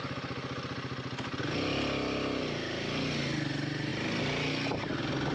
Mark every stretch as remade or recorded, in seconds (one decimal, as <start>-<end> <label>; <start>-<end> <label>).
0.0-5.3 recorded